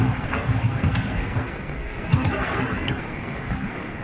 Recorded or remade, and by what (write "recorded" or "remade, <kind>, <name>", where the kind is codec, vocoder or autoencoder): remade, codec, SNAC